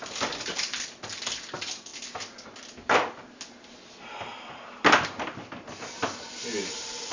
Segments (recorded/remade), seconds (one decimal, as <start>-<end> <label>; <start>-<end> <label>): 0.0-1.9 recorded; 1.9-6.2 remade; 6.2-7.1 recorded